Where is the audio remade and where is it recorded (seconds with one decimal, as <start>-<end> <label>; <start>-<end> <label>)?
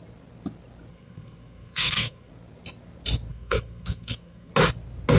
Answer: 0.0-0.9 recorded; 0.9-2.3 remade; 2.3-3.3 recorded; 3.3-4.5 remade; 4.5-5.2 recorded